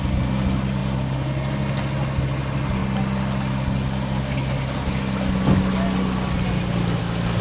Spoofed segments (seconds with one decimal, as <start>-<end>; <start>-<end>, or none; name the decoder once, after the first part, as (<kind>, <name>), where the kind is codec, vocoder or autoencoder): none